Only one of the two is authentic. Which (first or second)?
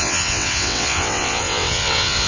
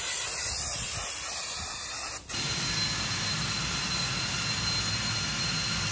second